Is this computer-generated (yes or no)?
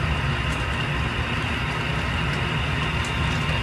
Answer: no